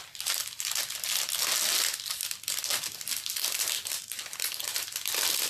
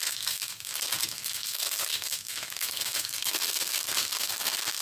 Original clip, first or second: first